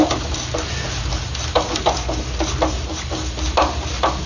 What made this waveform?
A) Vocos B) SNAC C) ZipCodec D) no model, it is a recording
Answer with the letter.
D